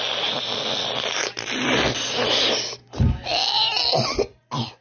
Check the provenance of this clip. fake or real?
real